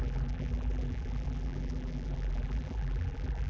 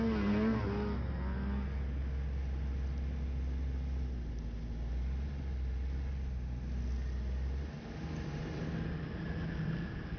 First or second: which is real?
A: second